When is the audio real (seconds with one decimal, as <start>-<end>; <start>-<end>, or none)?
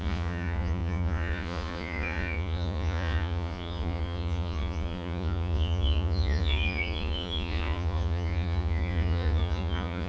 none